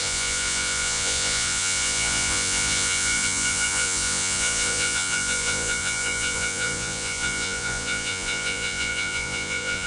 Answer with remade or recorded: remade